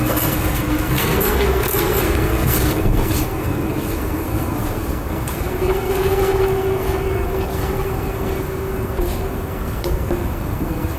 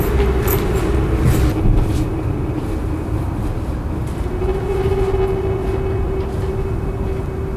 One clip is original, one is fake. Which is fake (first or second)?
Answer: first